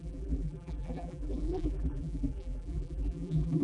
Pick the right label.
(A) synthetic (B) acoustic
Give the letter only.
A